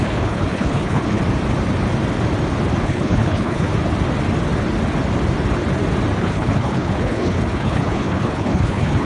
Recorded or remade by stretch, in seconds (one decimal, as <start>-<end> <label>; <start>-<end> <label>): 0.0-1.2 remade; 1.2-2.8 recorded; 2.8-3.7 remade; 3.7-6.2 recorded; 6.2-9.0 remade